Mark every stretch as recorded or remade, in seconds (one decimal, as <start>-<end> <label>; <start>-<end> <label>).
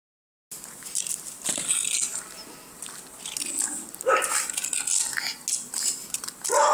0.0-4.0 recorded; 4.0-4.6 remade; 4.6-6.1 recorded; 6.1-6.7 remade